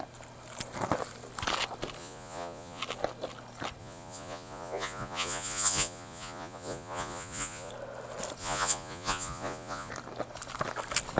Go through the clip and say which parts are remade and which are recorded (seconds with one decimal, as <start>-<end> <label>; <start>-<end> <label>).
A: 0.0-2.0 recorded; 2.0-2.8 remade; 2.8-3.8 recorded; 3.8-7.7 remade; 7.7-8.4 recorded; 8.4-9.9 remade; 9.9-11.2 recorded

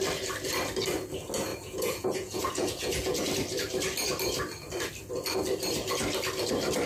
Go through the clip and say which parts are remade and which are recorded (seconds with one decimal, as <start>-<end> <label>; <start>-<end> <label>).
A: 0.0-1.5 recorded; 1.5-3.2 remade; 3.2-6.9 recorded

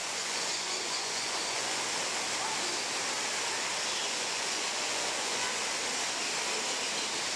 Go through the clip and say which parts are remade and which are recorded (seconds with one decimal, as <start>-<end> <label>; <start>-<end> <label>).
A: 0.0-1.8 remade; 1.8-4.0 recorded; 4.0-5.6 remade; 5.6-7.4 recorded

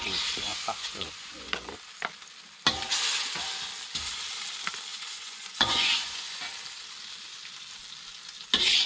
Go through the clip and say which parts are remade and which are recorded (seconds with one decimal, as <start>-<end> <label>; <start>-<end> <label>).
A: 0.0-0.5 recorded; 0.5-1.7 remade; 1.7-4.9 recorded; 4.9-6.4 remade; 6.4-8.9 recorded

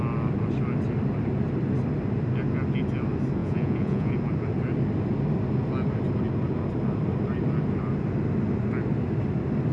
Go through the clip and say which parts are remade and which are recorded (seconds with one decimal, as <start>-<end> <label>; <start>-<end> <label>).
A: 0.0-3.4 recorded; 3.4-4.1 remade; 4.1-9.7 recorded

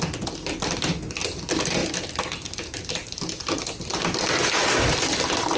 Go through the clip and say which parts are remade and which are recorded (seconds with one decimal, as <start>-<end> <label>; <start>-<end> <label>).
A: 0.0-5.6 recorded

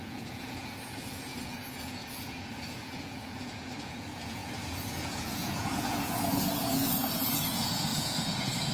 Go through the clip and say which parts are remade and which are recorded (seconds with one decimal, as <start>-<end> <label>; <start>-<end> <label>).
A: 0.0-8.7 remade

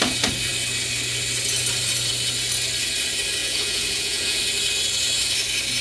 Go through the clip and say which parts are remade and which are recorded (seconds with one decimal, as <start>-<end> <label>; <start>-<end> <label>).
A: 0.0-3.4 recorded; 3.4-4.4 remade; 4.4-5.8 recorded